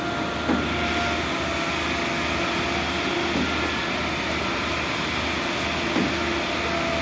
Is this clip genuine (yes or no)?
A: yes